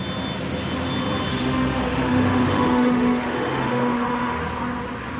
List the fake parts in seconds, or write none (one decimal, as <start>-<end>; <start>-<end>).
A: 1.3-4.4